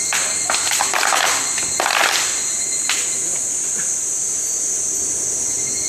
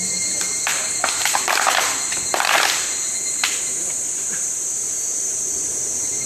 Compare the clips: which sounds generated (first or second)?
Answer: second